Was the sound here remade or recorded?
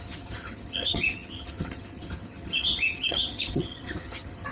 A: remade